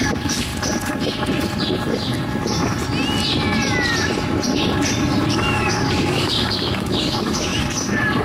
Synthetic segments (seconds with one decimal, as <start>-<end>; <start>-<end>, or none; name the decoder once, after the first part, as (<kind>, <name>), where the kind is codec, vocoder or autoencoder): 0.0-0.5 (codec, DAC); 5.3-7.5